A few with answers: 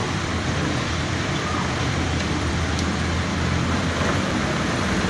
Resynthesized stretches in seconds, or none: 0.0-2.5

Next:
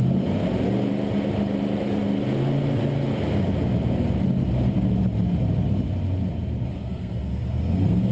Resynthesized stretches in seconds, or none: 6.7-8.1